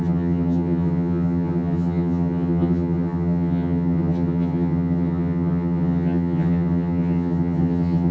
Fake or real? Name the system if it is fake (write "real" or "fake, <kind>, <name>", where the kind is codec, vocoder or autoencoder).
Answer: fake, vocoder, HiFi-GAN